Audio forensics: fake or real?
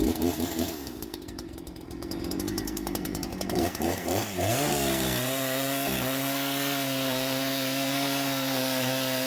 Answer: fake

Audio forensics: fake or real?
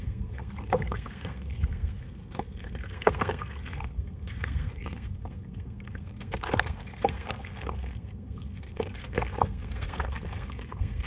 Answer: fake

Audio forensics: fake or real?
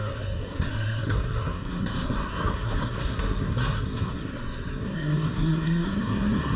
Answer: fake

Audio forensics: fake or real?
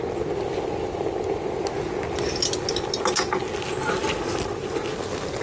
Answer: real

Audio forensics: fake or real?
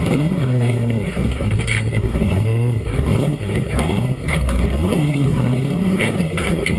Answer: fake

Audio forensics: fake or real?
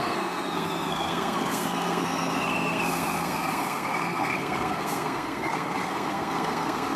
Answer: fake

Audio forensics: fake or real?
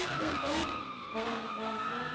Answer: fake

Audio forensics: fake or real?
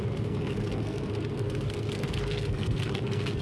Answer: fake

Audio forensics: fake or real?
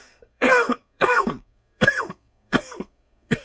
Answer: fake